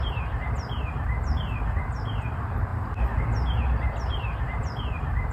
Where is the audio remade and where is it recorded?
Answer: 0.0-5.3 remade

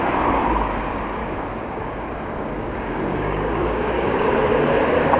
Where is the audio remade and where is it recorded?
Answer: 0.0-1.2 recorded; 1.2-4.3 remade; 4.3-5.2 recorded

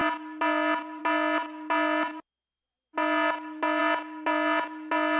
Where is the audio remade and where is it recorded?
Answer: 0.0-5.2 recorded

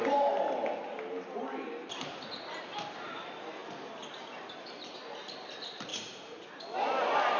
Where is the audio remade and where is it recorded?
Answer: 0.0-5.9 recorded; 5.9-6.5 remade; 6.5-7.4 recorded

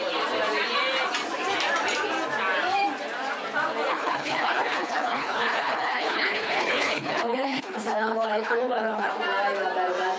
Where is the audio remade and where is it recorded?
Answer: 0.0-3.9 recorded; 3.9-9.1 remade; 9.1-10.2 recorded

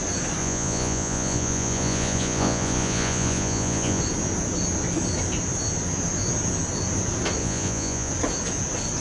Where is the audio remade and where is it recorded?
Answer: 0.0-0.4 recorded; 0.4-4.0 remade; 4.0-7.4 recorded; 7.4-8.1 remade; 8.1-9.0 recorded

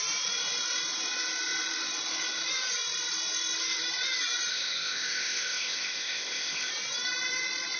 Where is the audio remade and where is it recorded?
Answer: 0.0-4.5 recorded; 4.5-6.7 remade; 6.7-7.8 recorded

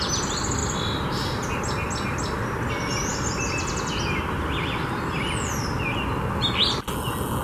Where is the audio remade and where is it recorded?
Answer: 0.0-7.4 recorded